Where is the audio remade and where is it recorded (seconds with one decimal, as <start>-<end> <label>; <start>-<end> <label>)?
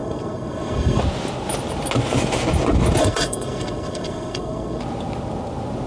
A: 0.0-1.0 remade; 1.0-3.0 recorded; 3.0-4.8 remade; 4.8-5.9 recorded